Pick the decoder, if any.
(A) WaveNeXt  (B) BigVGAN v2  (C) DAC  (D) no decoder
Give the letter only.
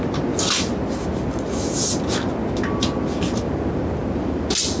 D